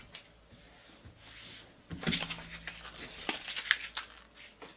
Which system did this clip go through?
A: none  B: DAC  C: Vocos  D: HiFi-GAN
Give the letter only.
A